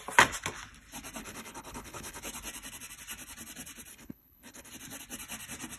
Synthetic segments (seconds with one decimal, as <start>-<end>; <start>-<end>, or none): 1.2-2.2; 3.9-4.7